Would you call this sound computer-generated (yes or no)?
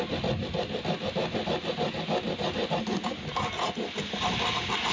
no